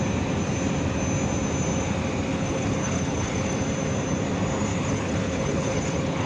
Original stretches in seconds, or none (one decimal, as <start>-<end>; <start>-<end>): 0.0-2.3; 3.5-4.7